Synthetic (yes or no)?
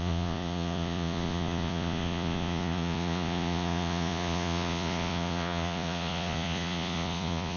yes